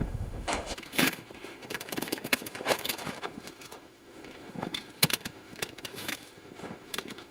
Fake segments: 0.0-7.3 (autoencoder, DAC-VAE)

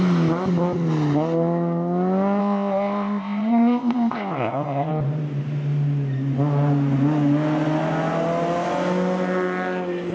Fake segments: 2.4-4.9 (codec, ZipCodec)

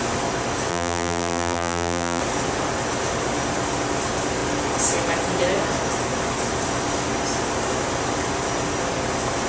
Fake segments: 0.7-2.2 (vocoder, BigVGAN v2)